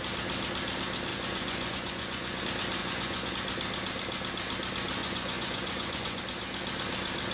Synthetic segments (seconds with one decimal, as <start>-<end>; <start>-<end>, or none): 1.1-2.4; 2.8-3.3; 5.0-6.2